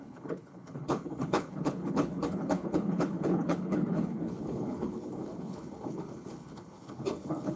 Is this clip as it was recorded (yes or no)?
no